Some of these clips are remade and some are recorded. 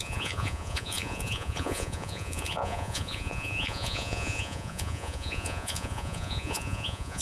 remade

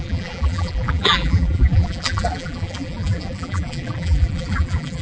remade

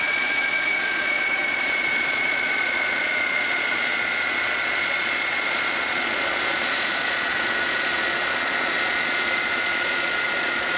remade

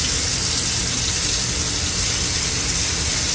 recorded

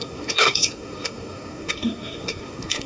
remade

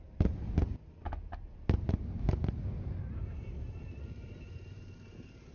recorded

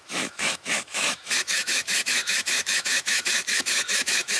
remade